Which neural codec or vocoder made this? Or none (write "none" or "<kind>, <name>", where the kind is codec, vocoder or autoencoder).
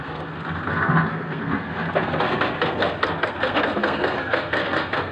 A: codec, SNAC